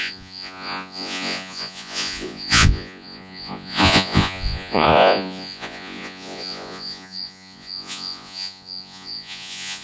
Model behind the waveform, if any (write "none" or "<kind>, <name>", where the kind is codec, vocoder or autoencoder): vocoder, Vocos